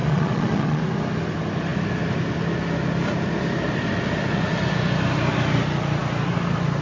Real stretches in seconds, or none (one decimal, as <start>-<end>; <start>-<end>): 0.8-6.8